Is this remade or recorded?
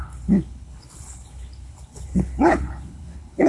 remade